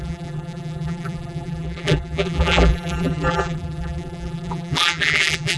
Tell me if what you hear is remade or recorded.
remade